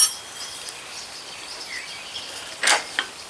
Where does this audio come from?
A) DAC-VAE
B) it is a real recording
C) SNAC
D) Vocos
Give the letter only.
B